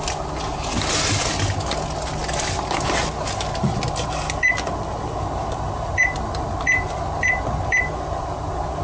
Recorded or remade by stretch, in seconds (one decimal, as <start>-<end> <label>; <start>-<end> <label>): 0.0-8.8 recorded